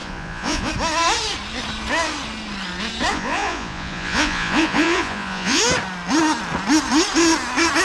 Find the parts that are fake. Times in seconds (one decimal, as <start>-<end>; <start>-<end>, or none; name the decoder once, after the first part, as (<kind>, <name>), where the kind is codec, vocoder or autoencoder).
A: 0.0-0.7 (vocoder, Vocos); 3.1-5.6